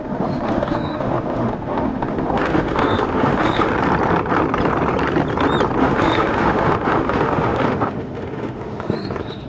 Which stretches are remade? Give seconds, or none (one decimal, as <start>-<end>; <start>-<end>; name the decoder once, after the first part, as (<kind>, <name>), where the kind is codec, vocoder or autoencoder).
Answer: 0.0-3.7 (autoencoder, DAC-VAE); 5.8-9.5